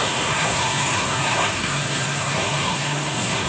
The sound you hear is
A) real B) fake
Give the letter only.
B